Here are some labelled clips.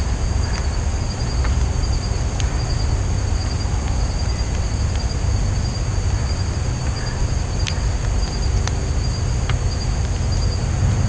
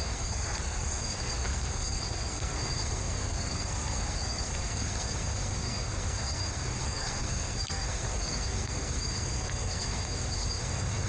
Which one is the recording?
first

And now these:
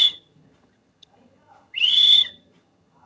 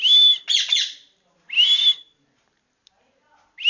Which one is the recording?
second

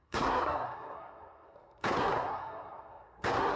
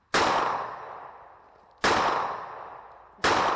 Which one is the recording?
second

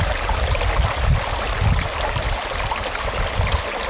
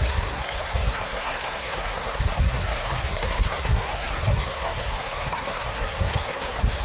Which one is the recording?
first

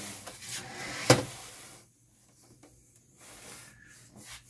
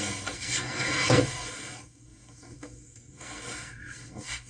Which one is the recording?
first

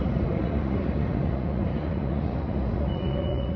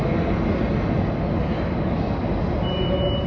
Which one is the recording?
second